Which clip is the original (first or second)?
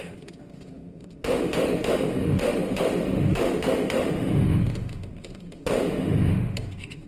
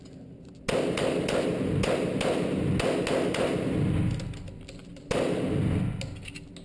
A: second